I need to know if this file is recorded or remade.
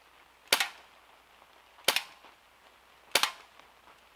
recorded